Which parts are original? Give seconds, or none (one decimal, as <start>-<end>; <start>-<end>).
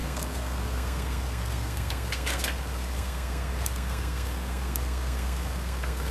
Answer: none